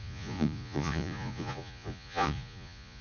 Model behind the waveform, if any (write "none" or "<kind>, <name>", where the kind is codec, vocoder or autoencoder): vocoder, Vocos